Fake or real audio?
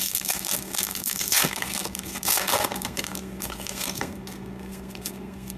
fake